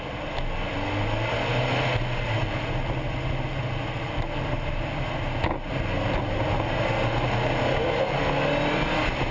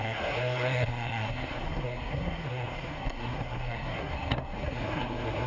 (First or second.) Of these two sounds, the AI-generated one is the second